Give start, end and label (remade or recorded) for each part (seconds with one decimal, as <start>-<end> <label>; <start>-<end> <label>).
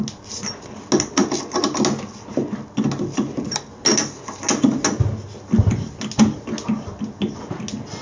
0.0-8.0 recorded